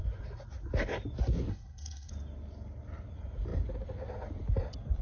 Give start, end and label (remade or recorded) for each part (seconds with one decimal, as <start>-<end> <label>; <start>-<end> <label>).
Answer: 0.0-1.5 recorded; 1.5-2.1 remade; 2.1-5.0 recorded